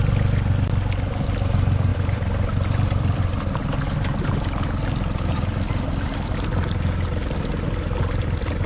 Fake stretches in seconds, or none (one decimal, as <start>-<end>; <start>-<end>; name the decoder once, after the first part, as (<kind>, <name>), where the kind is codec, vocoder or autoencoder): 1.9-3.2 (vocoder, BigVGAN v2)